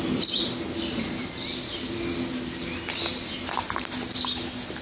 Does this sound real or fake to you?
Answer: real